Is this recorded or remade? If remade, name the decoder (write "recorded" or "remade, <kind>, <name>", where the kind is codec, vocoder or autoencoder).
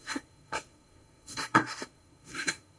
remade, codec, SNAC